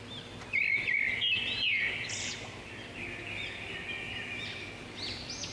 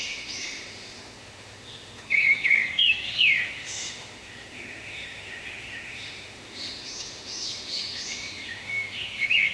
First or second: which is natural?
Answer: first